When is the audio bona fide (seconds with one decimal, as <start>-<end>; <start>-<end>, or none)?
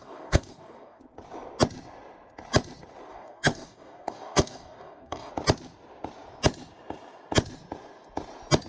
1.0-3.1; 5.3-8.7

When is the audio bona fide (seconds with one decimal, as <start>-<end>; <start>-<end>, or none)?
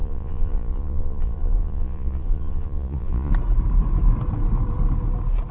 3.3-5.5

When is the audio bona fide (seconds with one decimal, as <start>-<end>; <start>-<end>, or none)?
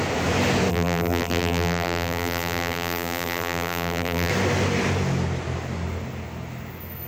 0.0-0.7; 4.3-7.1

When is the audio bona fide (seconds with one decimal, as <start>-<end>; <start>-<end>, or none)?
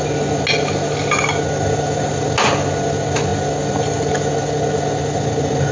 0.0-5.7